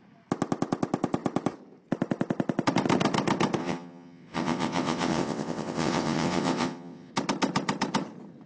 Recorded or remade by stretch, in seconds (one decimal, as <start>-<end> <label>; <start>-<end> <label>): 0.0-3.6 recorded; 3.6-7.1 remade; 7.1-8.5 recorded

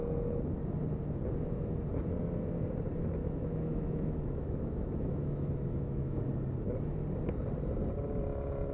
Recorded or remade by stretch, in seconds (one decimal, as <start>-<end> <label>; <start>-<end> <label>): 0.0-3.2 recorded; 3.2-6.2 remade; 6.2-8.7 recorded

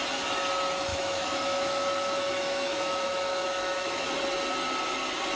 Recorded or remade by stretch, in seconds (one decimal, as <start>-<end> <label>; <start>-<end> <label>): 0.0-0.9 recorded; 0.9-4.1 remade; 4.1-5.4 recorded

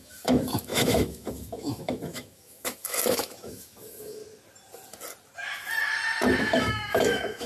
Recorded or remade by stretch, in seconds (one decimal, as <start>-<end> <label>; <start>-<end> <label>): 0.0-4.2 remade; 4.2-6.4 recorded; 6.4-7.5 remade